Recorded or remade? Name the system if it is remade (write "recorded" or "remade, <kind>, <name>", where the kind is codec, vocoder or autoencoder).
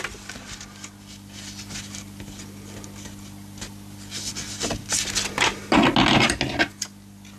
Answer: recorded